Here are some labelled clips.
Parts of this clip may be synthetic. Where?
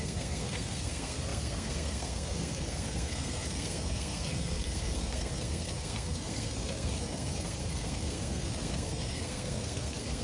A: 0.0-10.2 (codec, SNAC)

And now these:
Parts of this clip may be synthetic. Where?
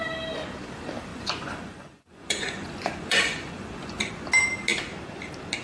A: 1.1-4.1 (vocoder, Vocos)